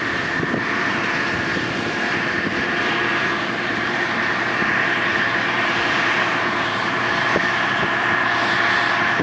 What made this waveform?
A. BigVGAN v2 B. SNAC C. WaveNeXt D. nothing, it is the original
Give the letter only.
A